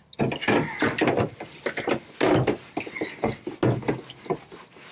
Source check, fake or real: real